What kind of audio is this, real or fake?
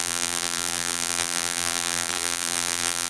fake